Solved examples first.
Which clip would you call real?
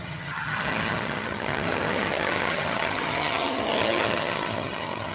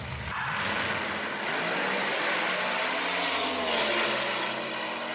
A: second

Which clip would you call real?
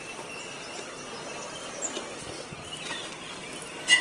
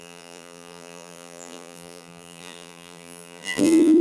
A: first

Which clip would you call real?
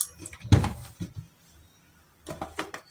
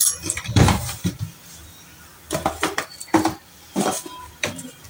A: first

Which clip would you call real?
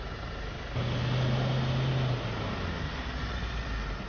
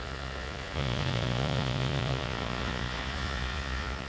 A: first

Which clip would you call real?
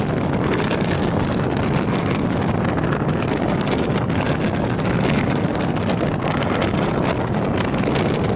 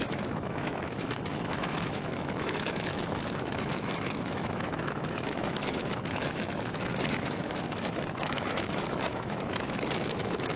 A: first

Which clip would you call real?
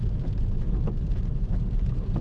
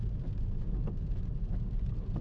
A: second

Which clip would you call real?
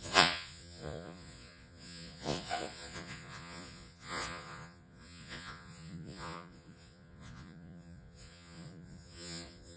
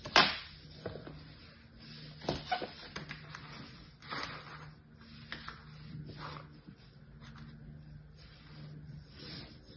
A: second